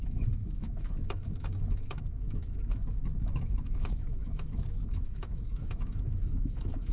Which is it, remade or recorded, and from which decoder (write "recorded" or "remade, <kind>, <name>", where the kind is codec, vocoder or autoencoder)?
remade, autoencoder, DAC-VAE